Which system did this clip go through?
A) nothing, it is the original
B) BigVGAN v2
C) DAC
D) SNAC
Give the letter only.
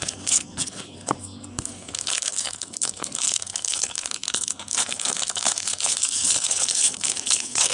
D